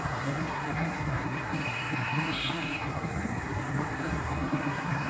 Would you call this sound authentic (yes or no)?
no